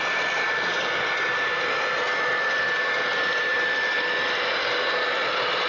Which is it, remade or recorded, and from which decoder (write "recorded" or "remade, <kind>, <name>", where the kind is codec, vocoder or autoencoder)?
recorded